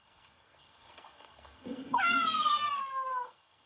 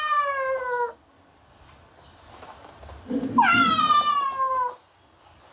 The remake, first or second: first